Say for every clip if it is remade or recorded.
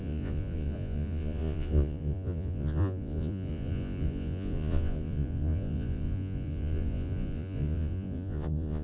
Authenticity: remade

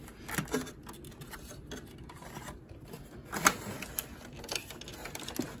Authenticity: recorded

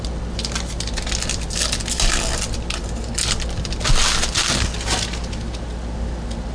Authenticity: recorded